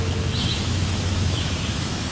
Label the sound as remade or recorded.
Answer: remade